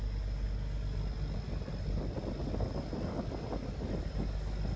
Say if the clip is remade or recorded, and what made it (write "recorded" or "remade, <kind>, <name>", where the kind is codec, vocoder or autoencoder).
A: recorded